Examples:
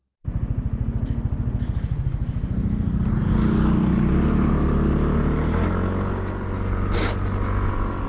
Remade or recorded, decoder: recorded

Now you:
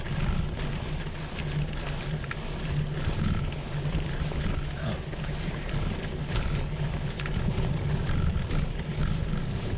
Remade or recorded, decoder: recorded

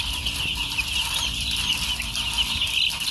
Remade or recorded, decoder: recorded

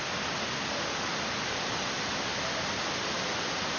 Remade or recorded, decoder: recorded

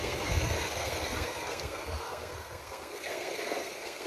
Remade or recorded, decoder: remade, codec, SNAC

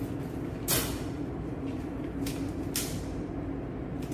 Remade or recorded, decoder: recorded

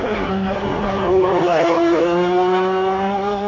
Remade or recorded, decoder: remade, codec, SNAC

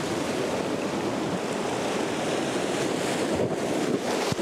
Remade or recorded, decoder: recorded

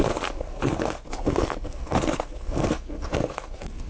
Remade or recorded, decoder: remade, codec, SNAC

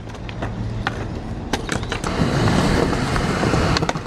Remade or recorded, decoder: recorded